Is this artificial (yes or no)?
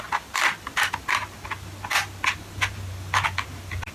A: no